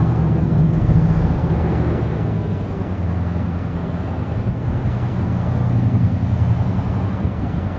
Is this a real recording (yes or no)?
no